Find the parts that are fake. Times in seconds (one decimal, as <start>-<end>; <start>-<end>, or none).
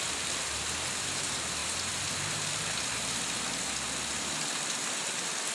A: none